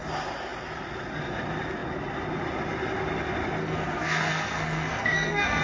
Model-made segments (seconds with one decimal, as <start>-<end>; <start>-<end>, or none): 3.6-5.6